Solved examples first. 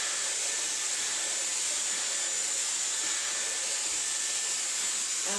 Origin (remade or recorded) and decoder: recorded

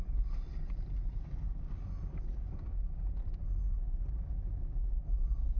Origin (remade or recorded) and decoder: recorded